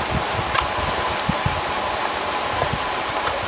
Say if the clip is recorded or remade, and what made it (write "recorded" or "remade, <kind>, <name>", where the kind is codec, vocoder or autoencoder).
recorded